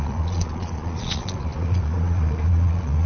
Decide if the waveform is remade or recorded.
remade